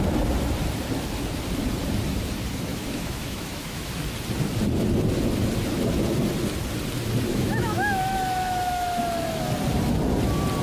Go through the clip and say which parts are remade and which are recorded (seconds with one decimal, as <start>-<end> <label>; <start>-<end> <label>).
0.0-2.7 recorded; 2.7-3.9 remade; 3.9-7.3 recorded; 7.3-9.0 remade; 9.0-10.6 recorded